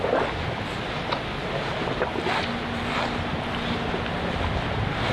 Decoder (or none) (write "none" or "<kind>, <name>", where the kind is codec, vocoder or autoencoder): none